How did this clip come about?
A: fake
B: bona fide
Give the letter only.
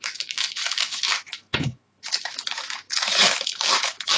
A